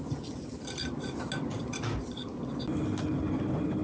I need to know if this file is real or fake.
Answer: real